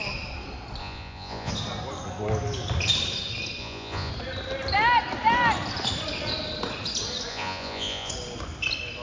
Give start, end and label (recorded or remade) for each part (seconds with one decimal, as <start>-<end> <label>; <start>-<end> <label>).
0.0-0.8 recorded; 0.8-1.5 remade; 1.5-3.6 recorded; 3.6-4.1 remade; 4.1-7.3 recorded; 7.3-8.1 remade; 8.1-9.0 recorded